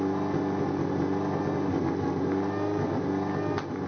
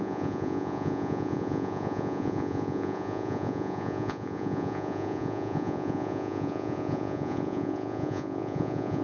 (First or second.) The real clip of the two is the first